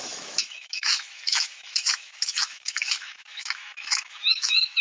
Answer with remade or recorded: remade